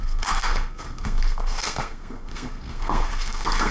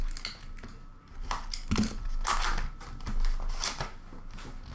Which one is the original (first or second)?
second